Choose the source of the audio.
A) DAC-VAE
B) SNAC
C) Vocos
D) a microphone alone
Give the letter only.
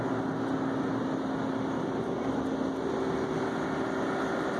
D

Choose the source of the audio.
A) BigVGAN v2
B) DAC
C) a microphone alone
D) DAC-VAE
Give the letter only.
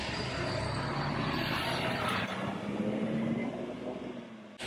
C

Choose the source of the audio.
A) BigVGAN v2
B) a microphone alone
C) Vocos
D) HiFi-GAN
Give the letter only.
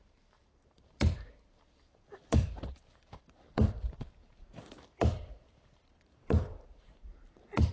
A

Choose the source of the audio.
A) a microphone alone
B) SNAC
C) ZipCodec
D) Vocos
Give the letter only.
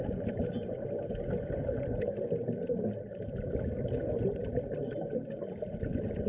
A